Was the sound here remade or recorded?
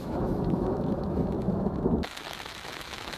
remade